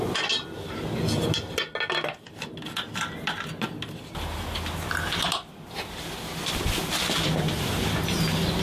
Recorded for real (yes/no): yes